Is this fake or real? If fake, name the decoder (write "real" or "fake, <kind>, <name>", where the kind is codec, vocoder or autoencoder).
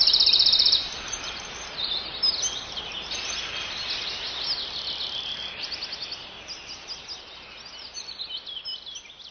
real